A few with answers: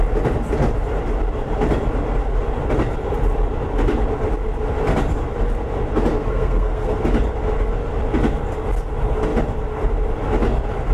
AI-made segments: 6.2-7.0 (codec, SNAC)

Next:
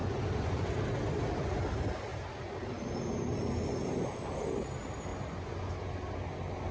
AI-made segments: 0.0-0.8 (vocoder, Vocos); 5.1-5.7